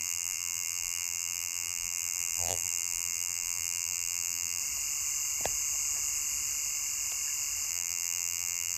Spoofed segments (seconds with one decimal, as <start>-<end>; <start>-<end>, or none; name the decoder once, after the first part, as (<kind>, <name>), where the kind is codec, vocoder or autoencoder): 0.0-4.6 (vocoder, BigVGAN v2); 7.7-8.8